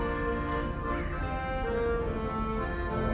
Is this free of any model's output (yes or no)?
yes